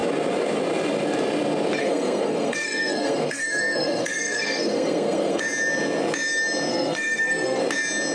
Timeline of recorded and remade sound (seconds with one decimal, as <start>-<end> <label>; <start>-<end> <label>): 0.0-1.8 recorded; 1.8-5.4 remade; 5.4-6.7 recorded; 6.7-7.6 remade; 7.6-8.1 recorded